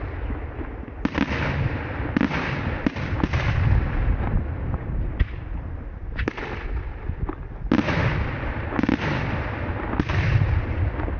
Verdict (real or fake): real